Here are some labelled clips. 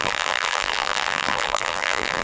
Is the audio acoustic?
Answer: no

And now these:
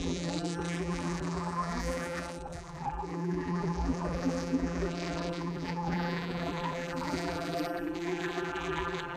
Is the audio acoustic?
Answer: no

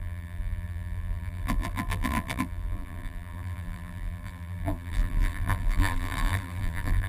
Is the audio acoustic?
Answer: no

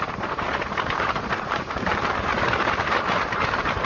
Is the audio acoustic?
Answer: no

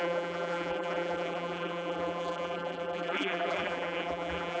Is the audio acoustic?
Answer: no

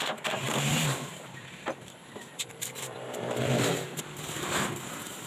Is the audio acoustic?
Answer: no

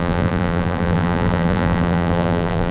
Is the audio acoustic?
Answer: no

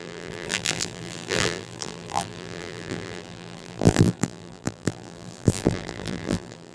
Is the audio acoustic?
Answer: no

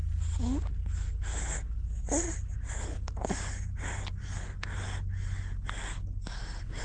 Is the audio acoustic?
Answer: yes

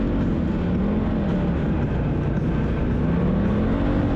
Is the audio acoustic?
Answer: yes